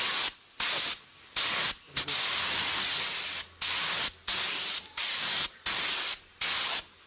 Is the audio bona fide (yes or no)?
yes